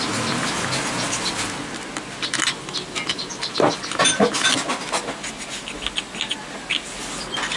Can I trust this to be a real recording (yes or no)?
yes